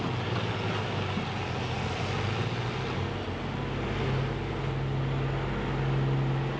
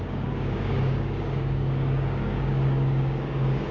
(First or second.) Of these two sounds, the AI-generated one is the second